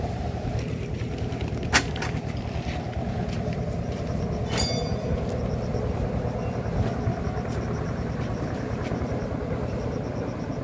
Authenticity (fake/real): real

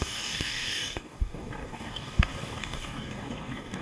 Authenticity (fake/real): fake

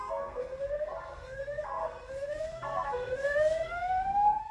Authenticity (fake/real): fake